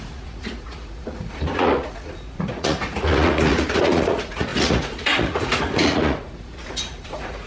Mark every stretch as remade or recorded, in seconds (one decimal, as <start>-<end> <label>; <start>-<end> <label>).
0.0-7.5 remade